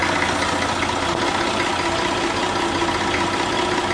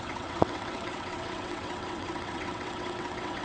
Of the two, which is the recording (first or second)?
first